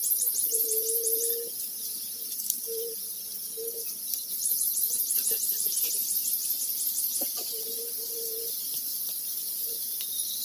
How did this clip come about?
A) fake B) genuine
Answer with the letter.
A